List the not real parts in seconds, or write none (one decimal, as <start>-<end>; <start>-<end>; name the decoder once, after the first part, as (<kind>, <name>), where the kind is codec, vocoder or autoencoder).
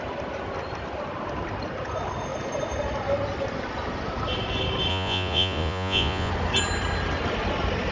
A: 4.9-6.3 (vocoder, Vocos)